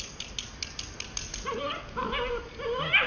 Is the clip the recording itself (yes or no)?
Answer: yes